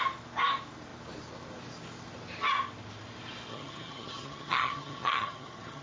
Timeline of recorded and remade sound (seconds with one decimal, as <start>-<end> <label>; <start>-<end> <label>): 0.0-3.5 recorded; 3.5-5.8 remade